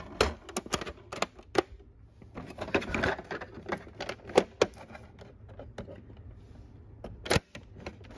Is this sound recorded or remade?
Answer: recorded